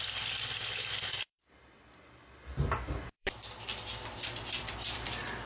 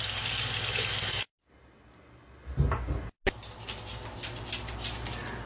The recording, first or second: second